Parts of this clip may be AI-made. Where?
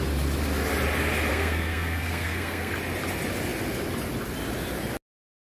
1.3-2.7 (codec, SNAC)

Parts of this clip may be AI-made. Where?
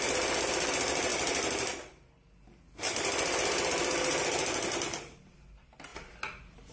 none